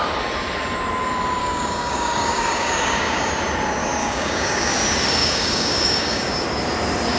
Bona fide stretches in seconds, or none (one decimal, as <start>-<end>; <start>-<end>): 0.0-1.4; 3.3-4.0; 4.7-5.2; 6.3-7.2